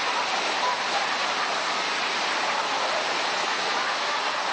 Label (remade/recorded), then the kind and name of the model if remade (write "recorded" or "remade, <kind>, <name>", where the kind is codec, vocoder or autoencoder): recorded